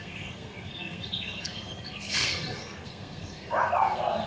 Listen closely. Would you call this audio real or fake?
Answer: fake